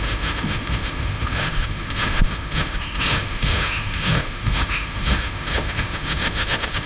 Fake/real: fake